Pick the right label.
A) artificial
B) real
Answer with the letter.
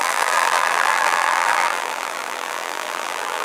A